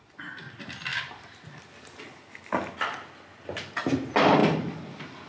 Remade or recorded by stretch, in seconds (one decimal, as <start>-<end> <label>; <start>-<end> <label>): 0.0-5.3 recorded